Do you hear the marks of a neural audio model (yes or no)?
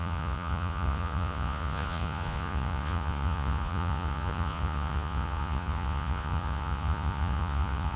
yes